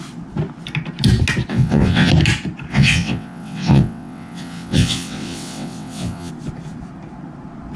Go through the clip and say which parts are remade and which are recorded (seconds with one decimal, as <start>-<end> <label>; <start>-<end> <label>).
0.0-1.5 recorded; 1.5-2.1 remade; 2.1-2.7 recorded; 2.7-6.3 remade; 6.3-7.8 recorded